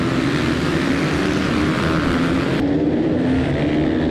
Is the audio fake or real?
real